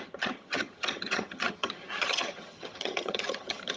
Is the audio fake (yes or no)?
yes